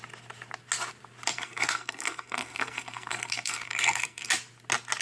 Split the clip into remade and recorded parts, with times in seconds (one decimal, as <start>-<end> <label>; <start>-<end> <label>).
0.0-1.3 recorded; 1.3-4.3 remade; 4.3-5.0 recorded